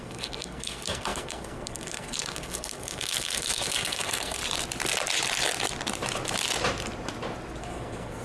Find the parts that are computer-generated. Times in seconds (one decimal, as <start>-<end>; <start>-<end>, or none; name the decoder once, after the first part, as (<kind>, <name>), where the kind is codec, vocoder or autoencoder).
0.0-4.4 (codec, SNAC); 7.6-8.2